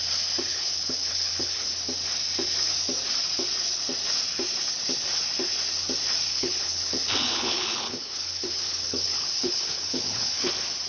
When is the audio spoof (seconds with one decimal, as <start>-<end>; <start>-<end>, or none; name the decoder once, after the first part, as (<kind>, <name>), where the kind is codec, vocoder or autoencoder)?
0.5-1.7 (codec, HILCodec); 6.3-10.5